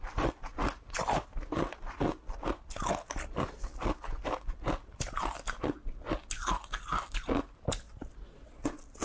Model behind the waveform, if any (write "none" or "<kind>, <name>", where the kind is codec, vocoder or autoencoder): none